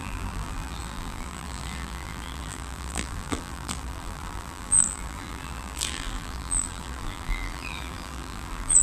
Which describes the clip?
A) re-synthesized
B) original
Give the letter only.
A